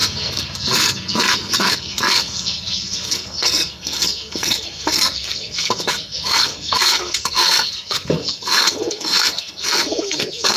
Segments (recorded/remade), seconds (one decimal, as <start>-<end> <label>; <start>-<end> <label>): 0.0-10.6 remade